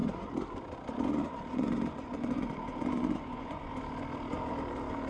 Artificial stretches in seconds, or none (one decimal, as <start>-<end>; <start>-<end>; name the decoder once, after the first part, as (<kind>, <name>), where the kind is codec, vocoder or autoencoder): 1.1-3.7 (vocoder, Vocos)